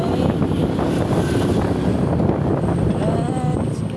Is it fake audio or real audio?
real